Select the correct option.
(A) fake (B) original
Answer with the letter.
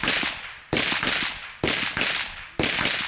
B